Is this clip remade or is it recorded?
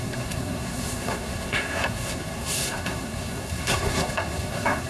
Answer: remade